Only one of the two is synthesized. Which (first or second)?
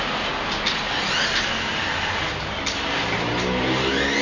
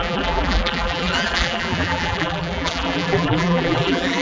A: second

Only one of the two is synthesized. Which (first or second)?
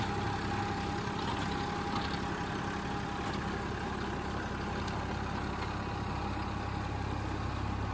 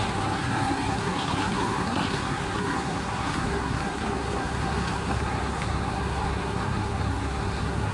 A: second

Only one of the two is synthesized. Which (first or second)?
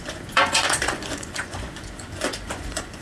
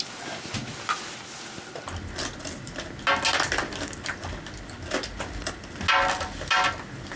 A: first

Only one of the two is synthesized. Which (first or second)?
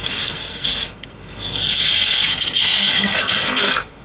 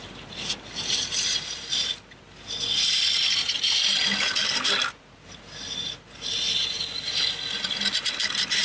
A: first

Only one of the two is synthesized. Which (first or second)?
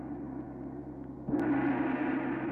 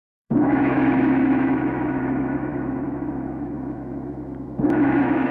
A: second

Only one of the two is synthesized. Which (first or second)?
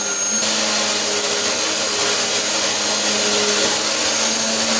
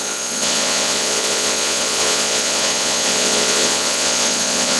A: second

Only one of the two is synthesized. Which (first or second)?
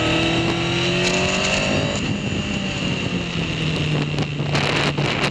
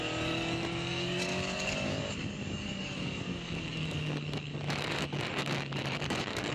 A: second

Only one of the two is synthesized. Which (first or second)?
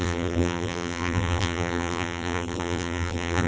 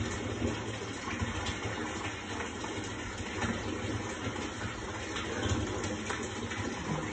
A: first